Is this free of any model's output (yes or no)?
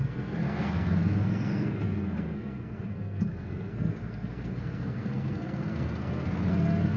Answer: no